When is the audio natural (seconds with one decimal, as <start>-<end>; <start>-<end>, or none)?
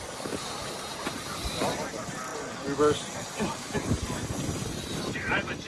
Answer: 2.3-3.6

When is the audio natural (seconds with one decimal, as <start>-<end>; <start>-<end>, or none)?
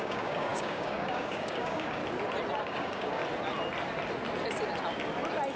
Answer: 2.0-2.6; 3.2-5.6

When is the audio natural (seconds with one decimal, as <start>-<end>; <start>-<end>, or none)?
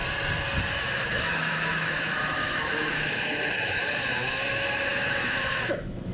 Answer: 0.0-0.7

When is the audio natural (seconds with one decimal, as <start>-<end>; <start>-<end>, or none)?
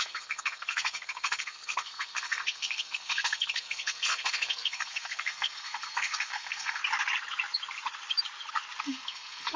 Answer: 6.8-8.8